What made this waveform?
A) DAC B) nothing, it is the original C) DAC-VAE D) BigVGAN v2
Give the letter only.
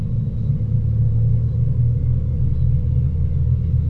B